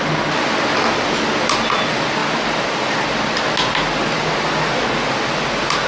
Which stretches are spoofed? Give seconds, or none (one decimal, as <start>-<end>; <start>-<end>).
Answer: none